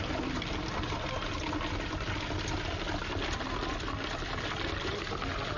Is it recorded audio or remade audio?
recorded